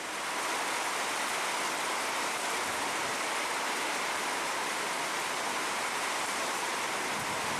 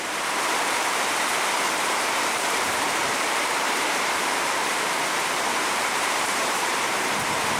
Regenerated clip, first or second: second